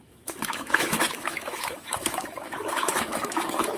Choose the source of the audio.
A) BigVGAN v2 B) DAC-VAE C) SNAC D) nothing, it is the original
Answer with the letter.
B